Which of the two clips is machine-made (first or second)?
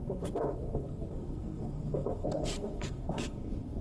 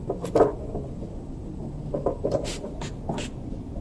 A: first